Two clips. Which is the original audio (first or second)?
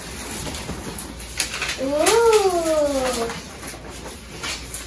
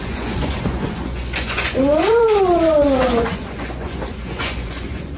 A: first